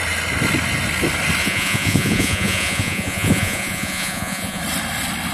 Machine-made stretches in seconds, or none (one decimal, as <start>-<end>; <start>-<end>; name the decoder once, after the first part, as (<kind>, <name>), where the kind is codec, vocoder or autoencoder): 1.4-4.6 (vocoder, Vocos)